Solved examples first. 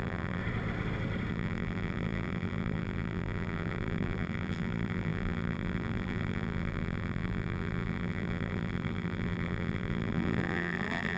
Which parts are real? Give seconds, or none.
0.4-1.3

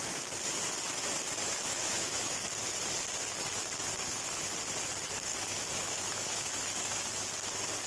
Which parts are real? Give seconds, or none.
0.0-1.4; 2.4-5.3; 7.0-7.9

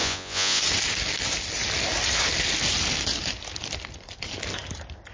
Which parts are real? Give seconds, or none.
0.6-5.1

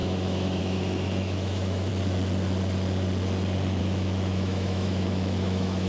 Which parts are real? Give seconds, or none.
1.9-3.8

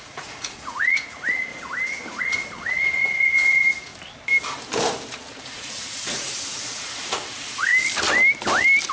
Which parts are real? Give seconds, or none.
1.5-2.2; 3.9-5.4; 7.7-8.9

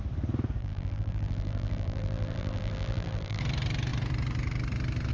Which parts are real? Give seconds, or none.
0.0-0.6; 3.4-5.1

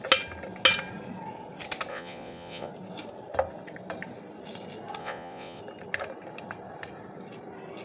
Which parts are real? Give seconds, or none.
0.0-1.9; 2.7-5.0; 5.6-7.8